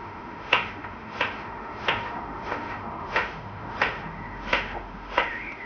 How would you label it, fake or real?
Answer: fake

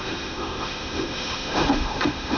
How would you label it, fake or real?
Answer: fake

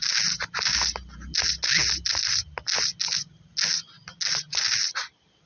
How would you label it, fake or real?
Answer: real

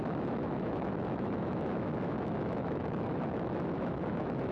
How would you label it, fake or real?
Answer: fake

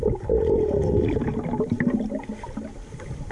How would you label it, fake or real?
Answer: real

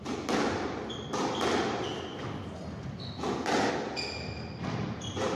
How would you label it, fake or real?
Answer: real